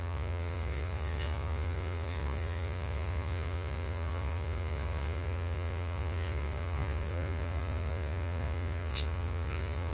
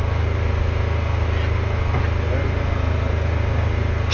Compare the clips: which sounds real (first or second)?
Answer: second